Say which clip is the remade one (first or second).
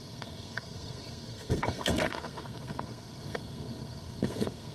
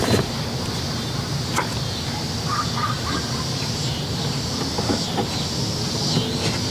first